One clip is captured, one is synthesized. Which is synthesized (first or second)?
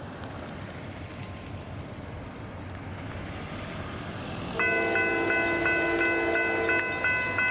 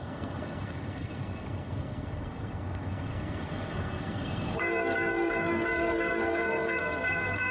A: second